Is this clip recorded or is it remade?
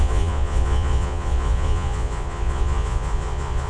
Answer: remade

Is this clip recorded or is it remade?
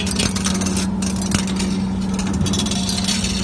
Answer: recorded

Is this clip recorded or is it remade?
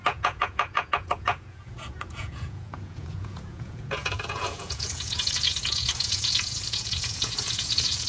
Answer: remade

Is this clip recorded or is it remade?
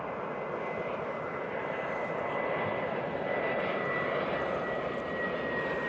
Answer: recorded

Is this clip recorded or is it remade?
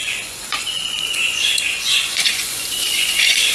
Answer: remade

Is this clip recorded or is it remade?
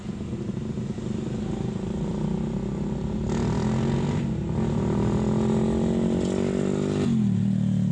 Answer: recorded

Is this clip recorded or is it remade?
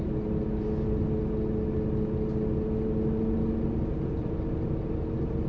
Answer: recorded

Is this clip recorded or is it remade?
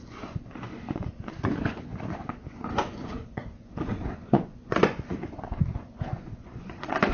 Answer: remade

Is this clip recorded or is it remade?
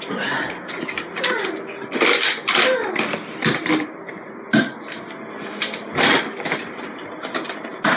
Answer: recorded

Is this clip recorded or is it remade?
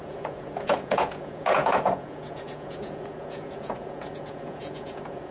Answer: remade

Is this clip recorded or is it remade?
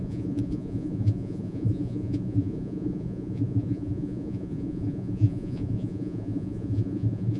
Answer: remade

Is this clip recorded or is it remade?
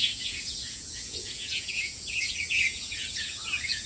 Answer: remade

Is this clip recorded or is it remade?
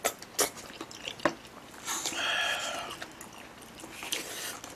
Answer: recorded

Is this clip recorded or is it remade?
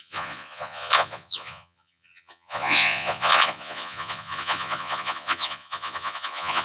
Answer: remade